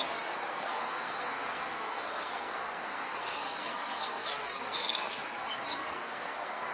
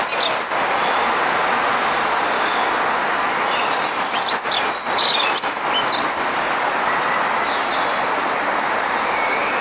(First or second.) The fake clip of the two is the first